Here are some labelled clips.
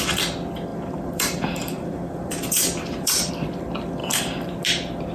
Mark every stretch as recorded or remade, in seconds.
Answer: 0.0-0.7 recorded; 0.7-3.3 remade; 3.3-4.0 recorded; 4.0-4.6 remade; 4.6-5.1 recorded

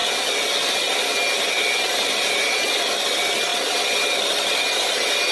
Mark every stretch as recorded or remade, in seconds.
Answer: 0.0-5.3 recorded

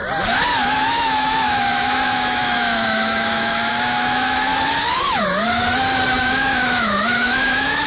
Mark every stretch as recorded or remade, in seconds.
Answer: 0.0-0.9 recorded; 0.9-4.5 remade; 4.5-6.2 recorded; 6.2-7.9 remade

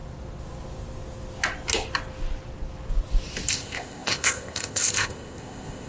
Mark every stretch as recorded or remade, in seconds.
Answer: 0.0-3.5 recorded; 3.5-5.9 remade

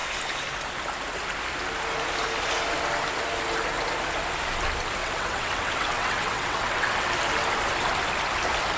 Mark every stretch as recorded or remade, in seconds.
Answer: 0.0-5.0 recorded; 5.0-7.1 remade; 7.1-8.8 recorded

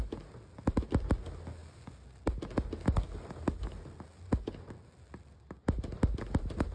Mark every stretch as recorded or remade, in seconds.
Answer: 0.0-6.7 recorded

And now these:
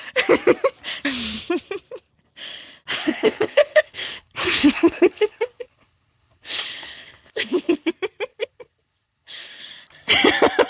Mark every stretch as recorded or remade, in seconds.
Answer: 0.0-3.0 recorded; 3.0-7.9 remade; 7.9-8.3 recorded; 8.3-9.6 remade; 9.6-10.7 recorded

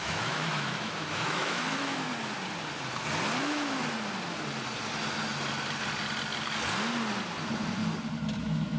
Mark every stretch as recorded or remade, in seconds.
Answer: 0.0-2.1 remade; 2.1-3.4 recorded; 3.4-3.8 remade; 3.8-8.4 recorded; 8.4-8.8 remade